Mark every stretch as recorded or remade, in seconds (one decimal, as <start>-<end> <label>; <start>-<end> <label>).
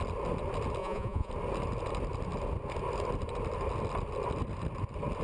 0.0-0.8 recorded; 0.8-1.3 remade; 1.3-5.2 recorded